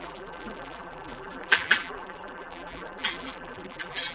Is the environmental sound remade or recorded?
remade